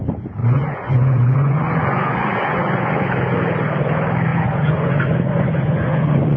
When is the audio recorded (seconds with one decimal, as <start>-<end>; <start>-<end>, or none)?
0.0-0.4; 3.0-4.3